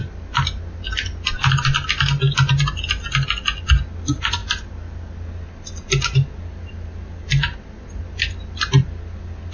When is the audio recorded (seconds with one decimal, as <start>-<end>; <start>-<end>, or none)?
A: 0.0-9.5